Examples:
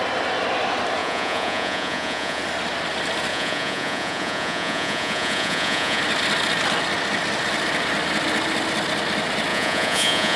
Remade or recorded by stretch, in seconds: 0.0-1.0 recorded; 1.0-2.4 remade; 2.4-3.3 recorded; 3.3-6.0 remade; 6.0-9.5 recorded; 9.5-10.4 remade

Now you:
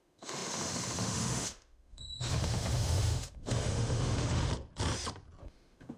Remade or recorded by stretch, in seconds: 0.0-4.5 remade; 4.5-5.4 recorded; 5.4-6.0 remade

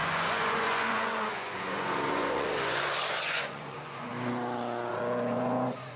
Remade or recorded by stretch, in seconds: 0.0-4.1 remade; 4.1-4.9 recorded; 4.9-6.0 remade

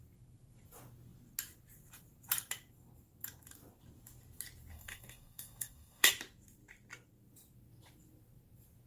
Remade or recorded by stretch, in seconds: 0.0-4.7 recorded; 4.7-6.1 remade; 6.1-8.9 recorded

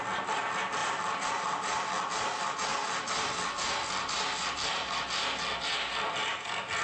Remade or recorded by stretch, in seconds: 0.0-6.8 recorded

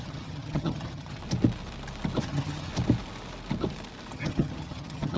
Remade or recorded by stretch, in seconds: 0.0-1.2 remade; 1.2-2.2 recorded; 2.2-2.7 remade; 2.7-4.1 recorded; 4.1-5.2 remade

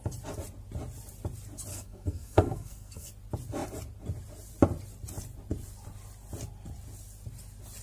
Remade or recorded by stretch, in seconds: 0.0-1.7 recorded; 1.7-3.1 remade; 3.1-7.8 recorded